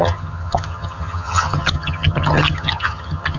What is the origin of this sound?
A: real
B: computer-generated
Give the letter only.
B